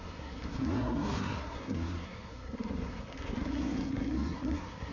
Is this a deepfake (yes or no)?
yes